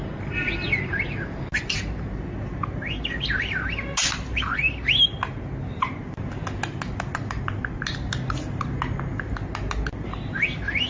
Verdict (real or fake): real